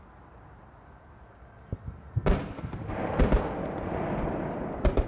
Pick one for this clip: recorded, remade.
recorded